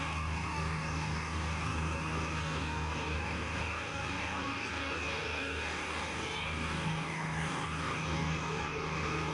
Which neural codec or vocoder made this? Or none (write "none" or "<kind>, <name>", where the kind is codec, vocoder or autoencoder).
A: codec, DAC